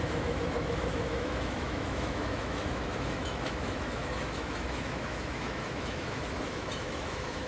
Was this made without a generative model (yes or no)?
no